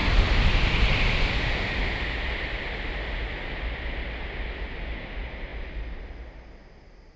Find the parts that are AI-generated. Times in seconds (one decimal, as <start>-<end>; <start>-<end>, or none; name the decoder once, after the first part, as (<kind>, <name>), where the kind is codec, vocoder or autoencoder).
0.0-0.5 (vocoder, BigVGAN v2)

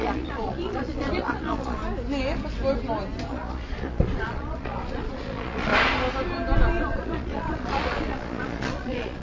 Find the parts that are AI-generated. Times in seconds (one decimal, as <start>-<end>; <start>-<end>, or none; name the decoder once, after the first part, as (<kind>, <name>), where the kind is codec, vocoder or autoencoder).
0.0-1.8 (vocoder, Vocos); 3.3-5.7; 6.8-9.2

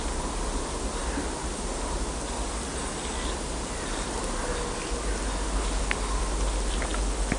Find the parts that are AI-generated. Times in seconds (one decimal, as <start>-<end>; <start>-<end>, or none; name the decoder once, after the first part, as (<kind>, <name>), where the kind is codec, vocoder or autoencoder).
none

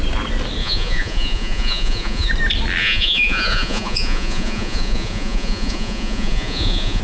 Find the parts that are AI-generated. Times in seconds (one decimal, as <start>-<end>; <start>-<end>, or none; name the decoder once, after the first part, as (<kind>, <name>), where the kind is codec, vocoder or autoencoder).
0.6-2.3 (vocoder, Vocos); 2.8-7.0